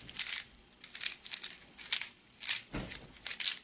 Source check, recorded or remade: recorded